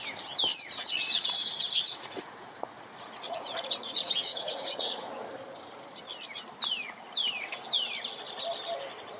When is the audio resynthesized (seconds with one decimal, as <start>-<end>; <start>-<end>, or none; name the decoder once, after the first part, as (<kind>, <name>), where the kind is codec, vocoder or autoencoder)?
0.5-5.1 (vocoder, Vocos)